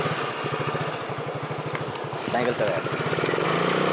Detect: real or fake real